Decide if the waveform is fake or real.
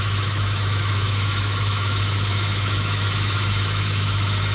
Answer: fake